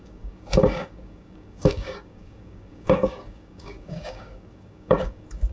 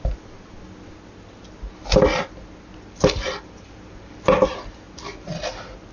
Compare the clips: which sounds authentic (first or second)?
second